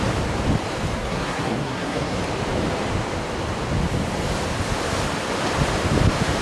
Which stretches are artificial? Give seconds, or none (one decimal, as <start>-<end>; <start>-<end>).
0.9-2.2